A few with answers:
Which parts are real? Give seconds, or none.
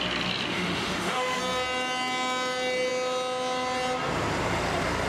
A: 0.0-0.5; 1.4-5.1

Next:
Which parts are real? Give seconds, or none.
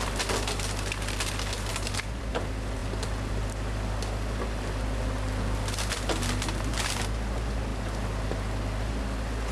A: 0.0-9.5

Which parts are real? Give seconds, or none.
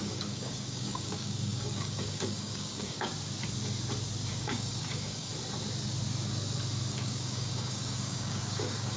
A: 3.1-4.3; 5.3-6.9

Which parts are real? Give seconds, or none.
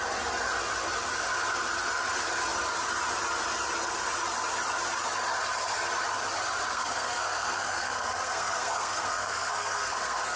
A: 0.0-6.7